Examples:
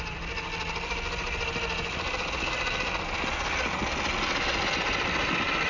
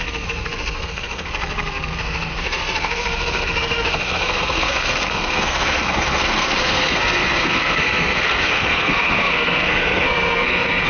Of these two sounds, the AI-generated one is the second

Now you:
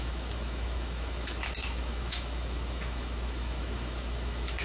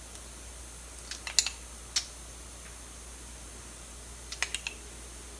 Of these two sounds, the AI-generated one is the first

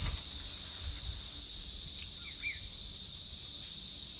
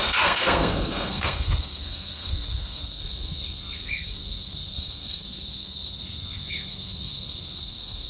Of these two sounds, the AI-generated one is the second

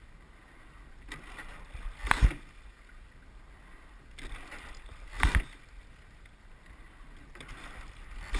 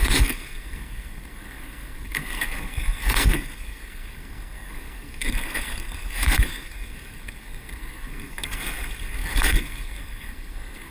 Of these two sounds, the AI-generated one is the second